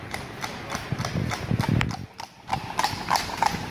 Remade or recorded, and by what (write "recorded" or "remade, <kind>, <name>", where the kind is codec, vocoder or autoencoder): remade, vocoder, BigVGAN v2